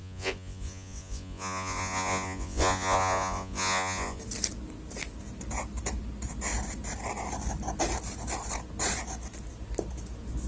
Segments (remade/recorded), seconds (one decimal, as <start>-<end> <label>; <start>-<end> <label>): 0.0-4.2 remade; 4.2-10.5 recorded